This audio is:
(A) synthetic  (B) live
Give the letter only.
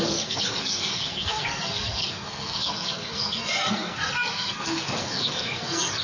A